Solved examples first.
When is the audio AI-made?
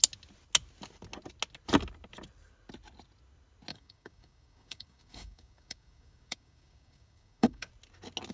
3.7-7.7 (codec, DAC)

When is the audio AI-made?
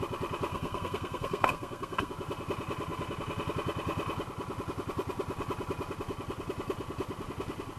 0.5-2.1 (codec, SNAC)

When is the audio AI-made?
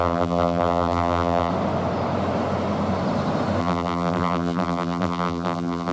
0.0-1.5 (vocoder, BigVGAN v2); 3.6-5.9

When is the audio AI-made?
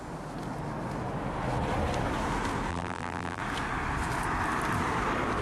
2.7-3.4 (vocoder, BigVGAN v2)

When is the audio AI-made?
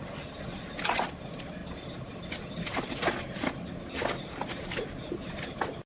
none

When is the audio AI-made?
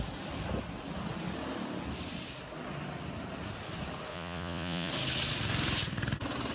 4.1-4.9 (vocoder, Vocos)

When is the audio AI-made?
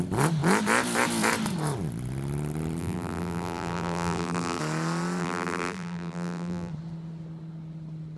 2.8-4.6 (vocoder, BigVGAN v2); 5.2-6.7